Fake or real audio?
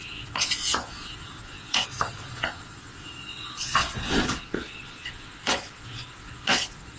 fake